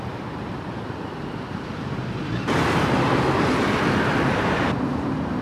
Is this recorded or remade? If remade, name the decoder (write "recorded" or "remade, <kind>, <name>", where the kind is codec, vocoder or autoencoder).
remade, vocoder, BigVGAN v2